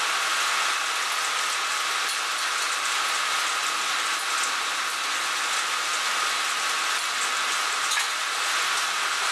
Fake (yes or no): no